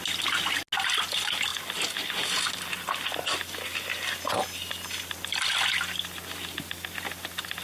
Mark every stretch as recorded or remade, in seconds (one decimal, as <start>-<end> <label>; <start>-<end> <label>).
0.0-7.6 recorded